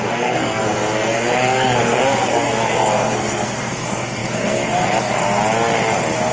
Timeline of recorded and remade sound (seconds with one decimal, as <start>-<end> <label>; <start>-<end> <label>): 0.0-5.4 remade; 5.4-6.3 recorded